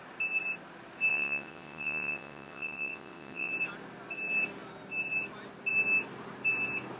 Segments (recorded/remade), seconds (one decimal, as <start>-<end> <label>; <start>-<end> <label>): 0.0-1.1 recorded; 1.1-3.5 remade; 3.5-7.0 recorded